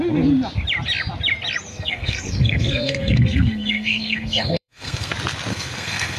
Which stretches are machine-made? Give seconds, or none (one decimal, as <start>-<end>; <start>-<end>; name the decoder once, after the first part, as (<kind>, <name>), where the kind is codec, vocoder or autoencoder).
1.7-5.1 (codec, SNAC); 5.5-6.2